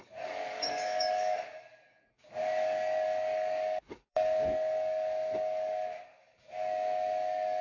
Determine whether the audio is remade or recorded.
remade